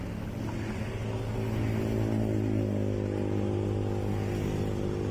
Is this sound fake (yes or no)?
no